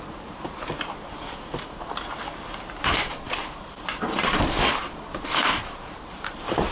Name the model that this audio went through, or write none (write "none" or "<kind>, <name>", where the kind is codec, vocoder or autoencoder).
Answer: vocoder, BigVGAN v2